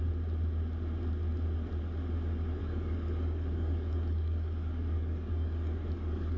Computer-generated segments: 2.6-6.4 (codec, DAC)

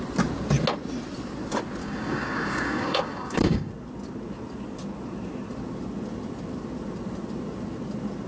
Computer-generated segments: 1.8-3.7 (codec, DAC)

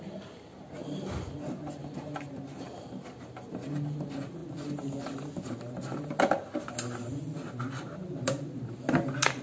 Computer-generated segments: none

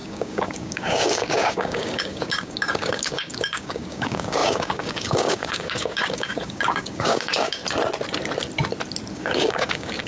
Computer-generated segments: 0.0-7.6 (codec, DAC); 9.1-10.1

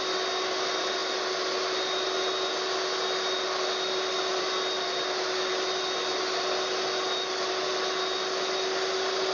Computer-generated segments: none

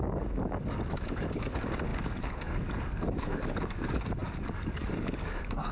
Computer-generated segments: 0.0-5.7 (codec, DAC)